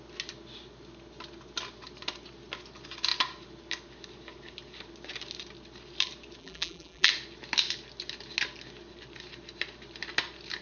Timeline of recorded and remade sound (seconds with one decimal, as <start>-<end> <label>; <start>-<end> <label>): 0.0-6.4 recorded; 6.4-7.1 remade; 7.1-10.6 recorded